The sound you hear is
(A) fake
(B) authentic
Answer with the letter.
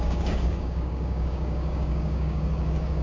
A